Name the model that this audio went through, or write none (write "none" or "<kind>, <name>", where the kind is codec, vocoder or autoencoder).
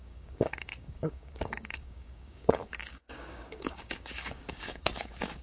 codec, DAC